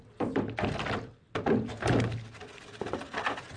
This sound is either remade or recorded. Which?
recorded